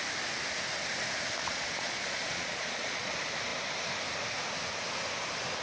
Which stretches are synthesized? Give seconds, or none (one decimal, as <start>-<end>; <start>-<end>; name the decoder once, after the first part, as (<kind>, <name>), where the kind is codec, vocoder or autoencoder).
1.4-3.1 (vocoder, Vocos)